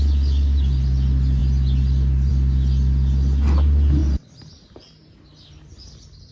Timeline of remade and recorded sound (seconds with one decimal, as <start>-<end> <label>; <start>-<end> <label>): 0.0-6.3 recorded